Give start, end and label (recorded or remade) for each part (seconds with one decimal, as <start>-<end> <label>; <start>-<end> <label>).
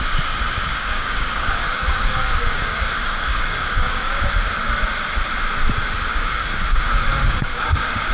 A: 0.0-0.7 recorded; 0.7-4.3 remade; 4.3-6.1 recorded; 6.1-8.1 remade